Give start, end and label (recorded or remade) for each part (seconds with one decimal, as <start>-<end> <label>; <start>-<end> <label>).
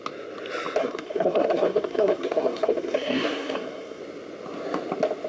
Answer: 0.0-0.8 recorded; 0.8-4.0 remade; 4.0-5.3 recorded